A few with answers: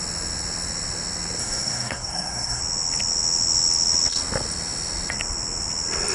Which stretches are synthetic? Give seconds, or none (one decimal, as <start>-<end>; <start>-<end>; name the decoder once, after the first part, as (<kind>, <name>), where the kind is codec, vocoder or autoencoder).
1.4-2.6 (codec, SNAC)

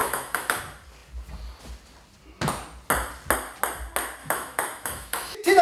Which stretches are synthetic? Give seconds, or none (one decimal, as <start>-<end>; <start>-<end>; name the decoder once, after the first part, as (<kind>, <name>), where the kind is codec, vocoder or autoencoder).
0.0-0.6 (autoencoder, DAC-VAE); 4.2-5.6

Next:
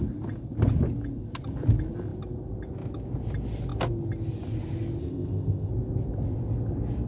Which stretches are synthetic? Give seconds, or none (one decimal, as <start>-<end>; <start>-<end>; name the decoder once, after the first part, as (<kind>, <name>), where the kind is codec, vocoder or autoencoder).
5.0-5.7 (codec, ZipCodec)

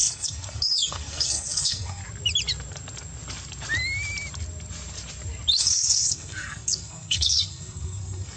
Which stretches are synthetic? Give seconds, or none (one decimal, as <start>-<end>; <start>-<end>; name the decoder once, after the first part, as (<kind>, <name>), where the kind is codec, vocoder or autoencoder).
0.0-2.0 (codec, SNAC); 5.6-8.4

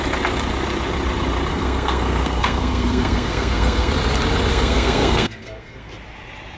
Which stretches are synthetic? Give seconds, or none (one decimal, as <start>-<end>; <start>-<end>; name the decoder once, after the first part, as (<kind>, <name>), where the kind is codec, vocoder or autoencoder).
1.5-3.9 (codec, SNAC); 4.5-5.9